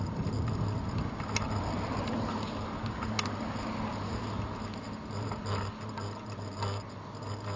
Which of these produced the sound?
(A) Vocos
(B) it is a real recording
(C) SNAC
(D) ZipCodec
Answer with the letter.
B